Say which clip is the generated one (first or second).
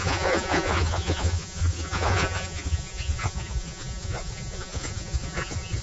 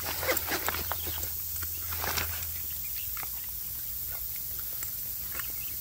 first